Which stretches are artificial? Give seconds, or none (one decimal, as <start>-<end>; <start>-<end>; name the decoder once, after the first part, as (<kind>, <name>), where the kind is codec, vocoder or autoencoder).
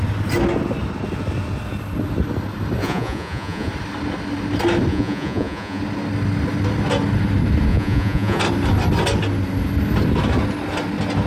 2.8-3.7 (vocoder, Vocos); 4.9-5.8; 7.7-8.4